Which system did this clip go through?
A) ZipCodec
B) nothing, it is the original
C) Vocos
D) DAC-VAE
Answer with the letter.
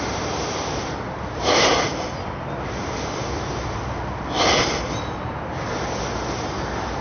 B